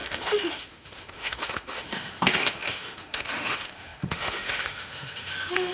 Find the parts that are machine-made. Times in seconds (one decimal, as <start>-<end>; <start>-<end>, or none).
0.0-5.7